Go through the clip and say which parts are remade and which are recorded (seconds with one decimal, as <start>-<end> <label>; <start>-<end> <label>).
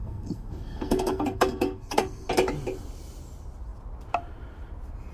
0.0-2.3 remade; 2.3-5.1 recorded